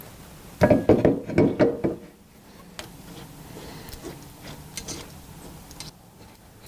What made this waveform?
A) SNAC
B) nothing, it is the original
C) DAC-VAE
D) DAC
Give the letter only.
B